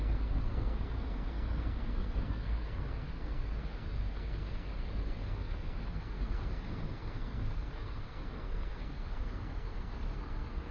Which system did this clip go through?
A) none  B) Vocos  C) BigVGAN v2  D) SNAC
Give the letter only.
D